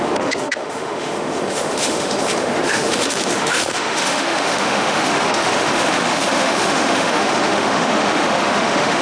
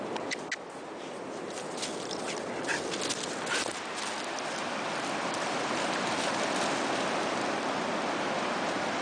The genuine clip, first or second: second